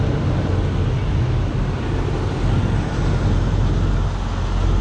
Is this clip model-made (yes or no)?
no